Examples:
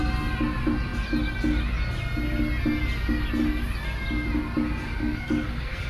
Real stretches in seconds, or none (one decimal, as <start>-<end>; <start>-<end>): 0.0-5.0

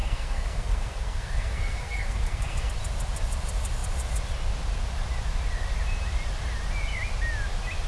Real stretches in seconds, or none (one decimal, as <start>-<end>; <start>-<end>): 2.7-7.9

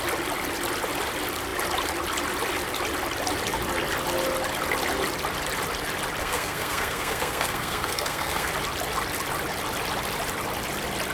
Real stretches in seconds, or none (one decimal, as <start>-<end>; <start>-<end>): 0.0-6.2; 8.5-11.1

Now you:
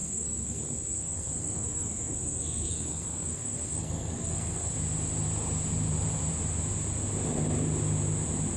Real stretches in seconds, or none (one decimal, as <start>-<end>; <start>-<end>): 4.7-8.6